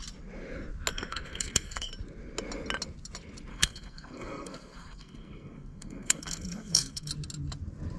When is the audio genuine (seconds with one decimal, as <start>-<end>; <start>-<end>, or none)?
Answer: 0.0-0.9; 1.9-3.5; 7.1-8.0